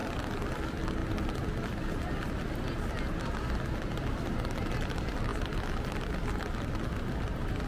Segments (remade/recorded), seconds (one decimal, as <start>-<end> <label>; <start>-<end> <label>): 0.0-7.7 recorded